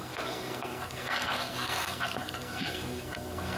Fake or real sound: fake